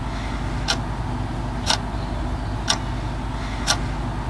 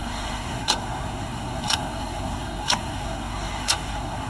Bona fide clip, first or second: first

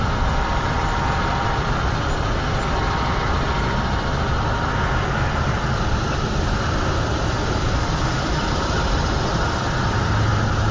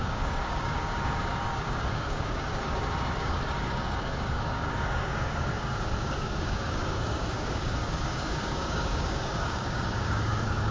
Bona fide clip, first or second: first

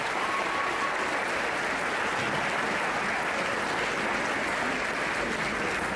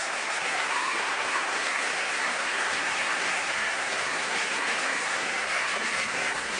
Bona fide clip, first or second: first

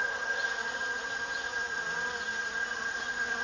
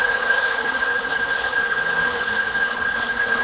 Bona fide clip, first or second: first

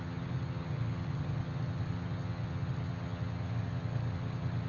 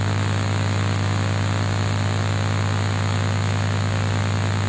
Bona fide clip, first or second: second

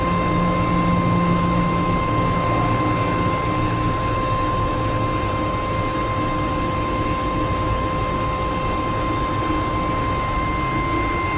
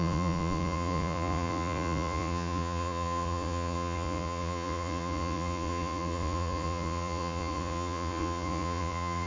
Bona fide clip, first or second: first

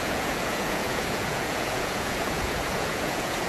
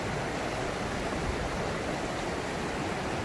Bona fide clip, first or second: second